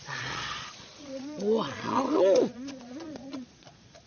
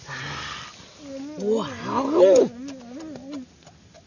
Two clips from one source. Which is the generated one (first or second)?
first